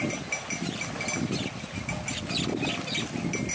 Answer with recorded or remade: recorded